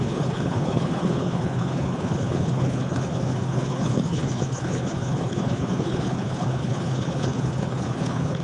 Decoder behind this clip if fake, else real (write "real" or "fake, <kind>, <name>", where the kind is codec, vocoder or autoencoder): fake, codec, HILCodec